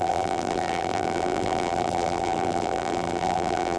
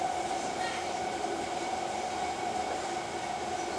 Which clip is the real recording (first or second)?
second